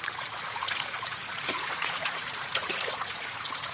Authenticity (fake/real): fake